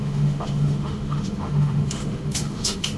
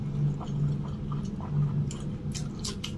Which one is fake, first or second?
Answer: first